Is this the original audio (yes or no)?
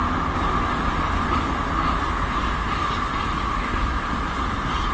yes